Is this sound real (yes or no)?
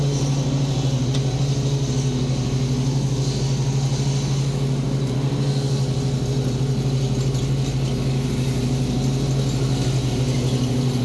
yes